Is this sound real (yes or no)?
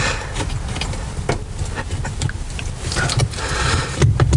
yes